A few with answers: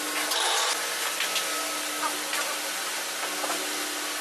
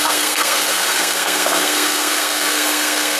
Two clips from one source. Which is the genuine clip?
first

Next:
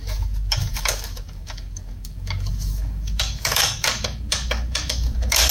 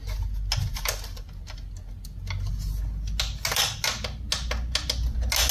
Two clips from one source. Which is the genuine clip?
second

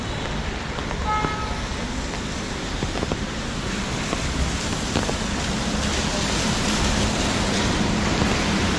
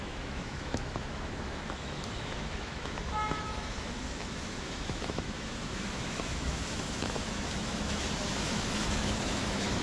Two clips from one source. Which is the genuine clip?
first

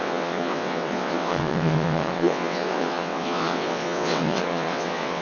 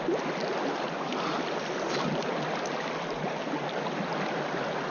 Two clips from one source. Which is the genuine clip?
second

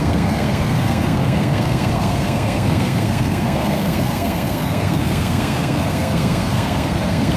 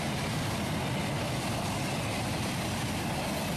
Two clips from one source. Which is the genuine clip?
second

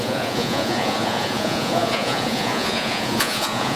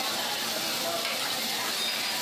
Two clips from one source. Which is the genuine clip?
second